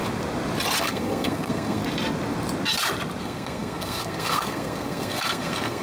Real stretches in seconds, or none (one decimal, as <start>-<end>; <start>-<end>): 0.0-0.8; 1.8-3.2